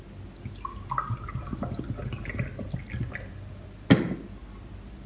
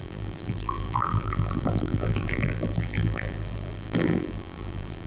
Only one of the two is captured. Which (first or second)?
first